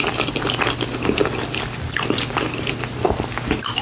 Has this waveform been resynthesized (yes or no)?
no